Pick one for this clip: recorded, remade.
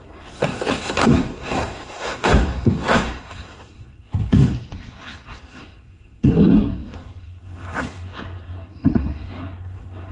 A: remade